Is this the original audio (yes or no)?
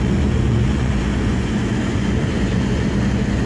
no